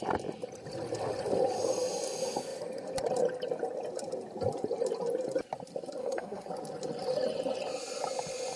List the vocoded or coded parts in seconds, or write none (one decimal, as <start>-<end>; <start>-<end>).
6.0-6.5